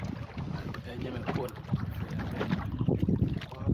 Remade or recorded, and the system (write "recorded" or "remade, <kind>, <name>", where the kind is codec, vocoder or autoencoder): recorded